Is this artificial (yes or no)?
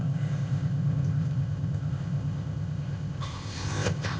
yes